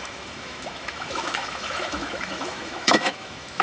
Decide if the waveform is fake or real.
fake